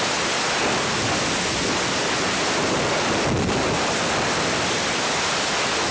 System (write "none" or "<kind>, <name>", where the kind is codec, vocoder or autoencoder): none